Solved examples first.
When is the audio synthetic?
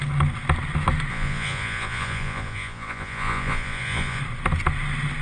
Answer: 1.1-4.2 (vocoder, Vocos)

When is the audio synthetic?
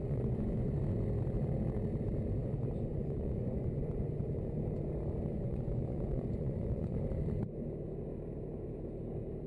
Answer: 0.0-0.8 (vocoder, Vocos); 2.9-4.2; 5.3-7.0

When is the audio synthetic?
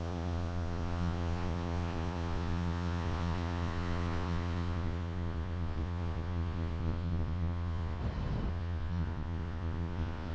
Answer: 0.0-8.0 (vocoder, Vocos); 8.5-10.3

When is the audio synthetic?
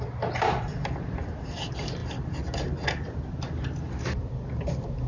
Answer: none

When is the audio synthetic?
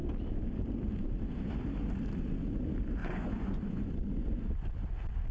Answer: 3.0-3.9 (vocoder, Vocos)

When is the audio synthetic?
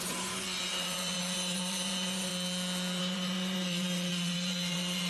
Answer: 0.0-2.3 (vocoder, Vocos); 3.0-5.1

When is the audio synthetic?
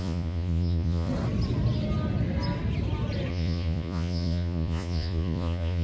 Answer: 0.0-1.1 (vocoder, Vocos); 3.3-5.8